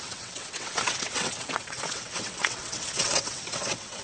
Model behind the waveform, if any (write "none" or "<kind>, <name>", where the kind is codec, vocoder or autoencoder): vocoder, WaveNeXt